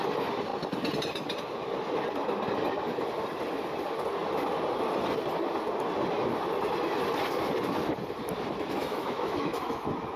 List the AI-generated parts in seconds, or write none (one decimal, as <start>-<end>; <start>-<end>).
8.8-10.2